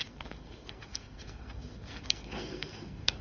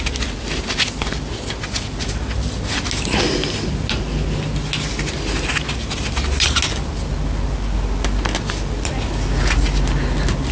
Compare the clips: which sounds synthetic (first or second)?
first